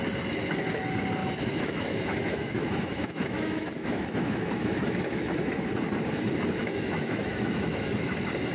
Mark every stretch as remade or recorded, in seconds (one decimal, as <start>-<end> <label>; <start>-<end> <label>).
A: 0.0-1.2 recorded; 1.2-5.5 remade; 5.5-6.6 recorded; 6.6-8.1 remade; 8.1-8.5 recorded